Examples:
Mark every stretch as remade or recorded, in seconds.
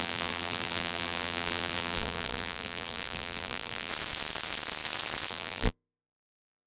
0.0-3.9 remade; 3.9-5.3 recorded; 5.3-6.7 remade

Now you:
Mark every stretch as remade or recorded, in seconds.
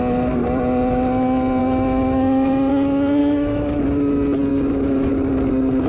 0.0-1.6 recorded; 1.6-2.7 remade; 2.7-3.2 recorded; 3.2-3.8 remade; 3.8-4.5 recorded; 4.5-5.1 remade; 5.1-5.9 recorded